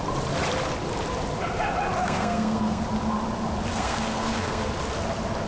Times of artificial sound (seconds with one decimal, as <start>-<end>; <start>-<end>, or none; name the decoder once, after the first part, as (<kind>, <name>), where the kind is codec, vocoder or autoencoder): 2.0-2.8 (codec, SNAC); 3.7-4.7